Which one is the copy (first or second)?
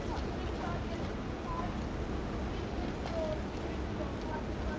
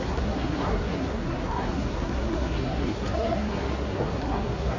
second